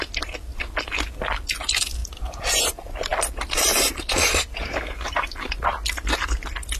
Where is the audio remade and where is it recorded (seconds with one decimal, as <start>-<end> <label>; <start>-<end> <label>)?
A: 0.0-6.8 recorded

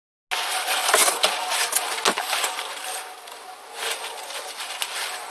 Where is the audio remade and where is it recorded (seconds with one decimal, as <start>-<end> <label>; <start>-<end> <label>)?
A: 0.0-5.3 recorded

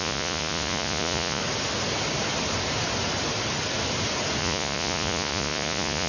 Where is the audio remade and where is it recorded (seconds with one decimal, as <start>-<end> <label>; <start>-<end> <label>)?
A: 0.0-1.4 remade; 1.4-4.4 recorded; 4.4-6.1 remade